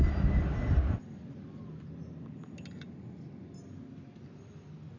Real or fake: real